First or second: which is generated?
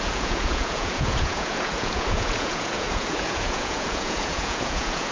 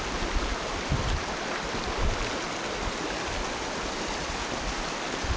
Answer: first